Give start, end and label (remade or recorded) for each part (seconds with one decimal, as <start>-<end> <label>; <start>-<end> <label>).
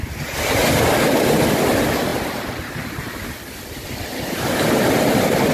0.0-5.5 recorded